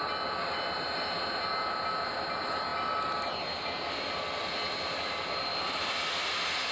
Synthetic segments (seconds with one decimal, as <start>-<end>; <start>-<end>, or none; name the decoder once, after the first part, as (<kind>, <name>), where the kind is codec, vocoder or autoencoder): none